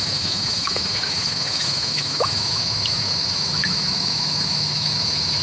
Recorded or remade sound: remade